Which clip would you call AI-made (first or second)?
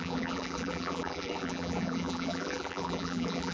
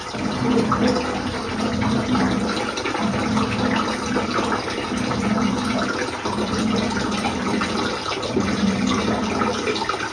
first